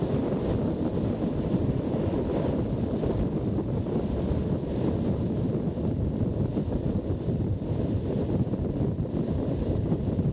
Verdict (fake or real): real